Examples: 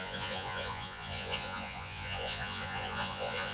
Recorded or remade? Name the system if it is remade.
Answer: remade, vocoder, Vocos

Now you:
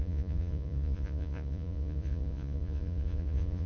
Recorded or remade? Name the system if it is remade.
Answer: remade, vocoder, Vocos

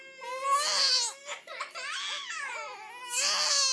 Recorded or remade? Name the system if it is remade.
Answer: recorded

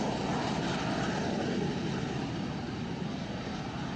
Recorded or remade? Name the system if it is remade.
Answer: recorded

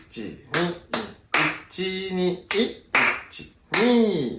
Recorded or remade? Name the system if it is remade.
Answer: recorded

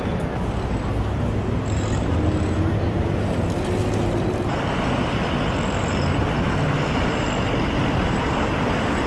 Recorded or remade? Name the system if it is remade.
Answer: recorded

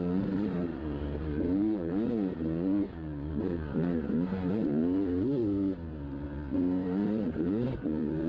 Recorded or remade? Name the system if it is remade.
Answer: remade, vocoder, Vocos